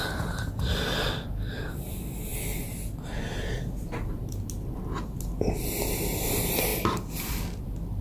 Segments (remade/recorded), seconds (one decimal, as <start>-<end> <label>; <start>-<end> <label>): 0.0-2.3 remade; 2.3-5.8 recorded; 5.8-6.7 remade; 6.7-7.3 recorded; 7.3-8.0 remade